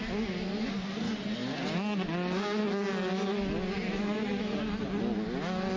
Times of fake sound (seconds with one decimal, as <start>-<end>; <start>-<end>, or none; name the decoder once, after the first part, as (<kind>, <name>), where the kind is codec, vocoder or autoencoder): none